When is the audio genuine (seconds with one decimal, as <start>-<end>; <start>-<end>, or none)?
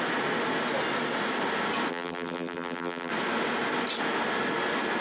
0.0-1.9; 3.1-5.0